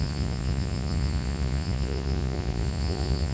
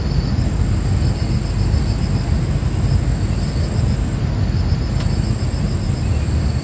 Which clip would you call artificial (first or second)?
first